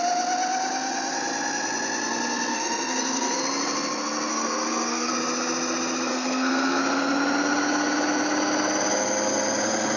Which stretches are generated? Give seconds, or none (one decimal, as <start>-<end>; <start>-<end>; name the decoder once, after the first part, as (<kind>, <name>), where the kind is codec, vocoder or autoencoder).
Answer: 2.5-3.4 (codec, SNAC); 4.3-5.1; 6.1-6.8